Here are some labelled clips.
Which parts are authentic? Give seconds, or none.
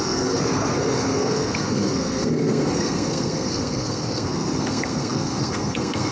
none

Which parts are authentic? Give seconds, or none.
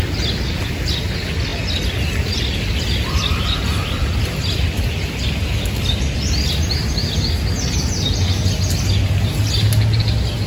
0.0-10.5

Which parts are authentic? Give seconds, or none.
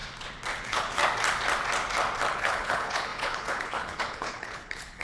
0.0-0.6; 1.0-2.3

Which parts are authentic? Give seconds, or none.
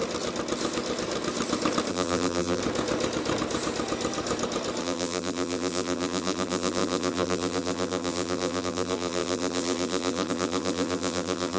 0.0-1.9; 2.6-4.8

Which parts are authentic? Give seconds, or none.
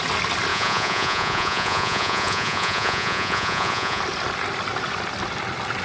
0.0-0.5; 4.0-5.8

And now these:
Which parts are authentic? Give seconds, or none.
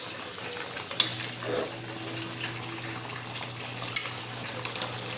0.0-5.2